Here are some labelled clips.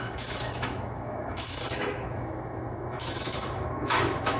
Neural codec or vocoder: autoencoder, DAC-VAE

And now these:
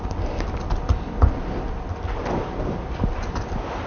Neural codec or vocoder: none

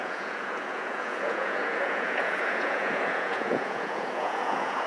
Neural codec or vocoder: vocoder, Vocos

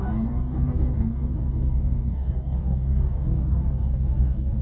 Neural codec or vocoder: codec, DAC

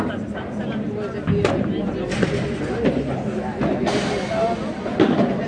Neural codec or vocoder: none